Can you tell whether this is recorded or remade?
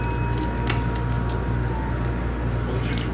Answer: recorded